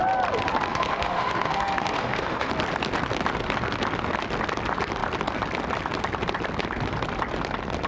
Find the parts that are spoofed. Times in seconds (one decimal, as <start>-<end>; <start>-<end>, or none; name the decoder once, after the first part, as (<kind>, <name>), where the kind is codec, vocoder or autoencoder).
0.7-2.5 (autoencoder, DAC-VAE)

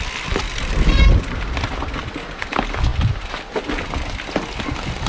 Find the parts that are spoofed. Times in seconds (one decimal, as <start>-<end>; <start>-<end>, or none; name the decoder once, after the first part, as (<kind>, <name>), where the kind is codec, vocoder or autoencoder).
none